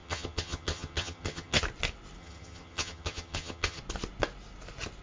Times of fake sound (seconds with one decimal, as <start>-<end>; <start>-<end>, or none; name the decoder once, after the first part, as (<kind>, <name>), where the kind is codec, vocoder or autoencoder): 0.0-1.6 (vocoder, HiFi-GAN); 2.2-3.8